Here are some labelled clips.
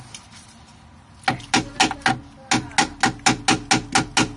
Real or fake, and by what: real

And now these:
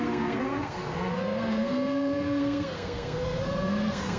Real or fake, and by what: fake, codec, SNAC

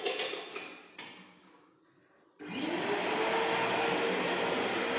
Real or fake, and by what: real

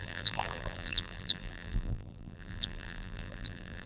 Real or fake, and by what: fake, vocoder, BigVGAN v2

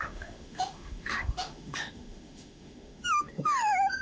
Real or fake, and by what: fake, autoencoder, DAC-VAE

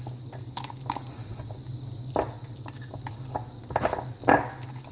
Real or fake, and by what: real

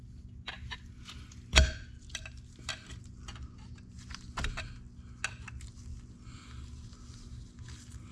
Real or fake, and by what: real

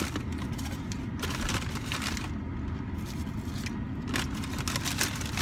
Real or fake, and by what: real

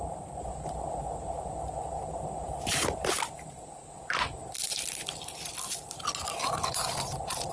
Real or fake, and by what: real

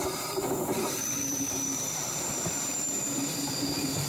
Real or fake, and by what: fake, vocoder, BigVGAN v2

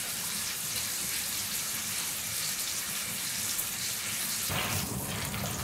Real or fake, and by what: fake, vocoder, BigVGAN v2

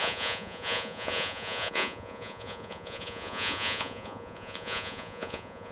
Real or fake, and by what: fake, vocoder, Vocos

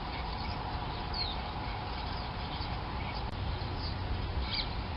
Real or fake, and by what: real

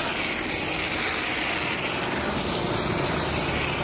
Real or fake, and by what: real